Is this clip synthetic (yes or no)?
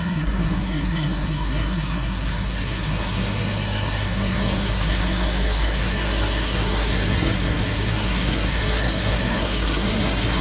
yes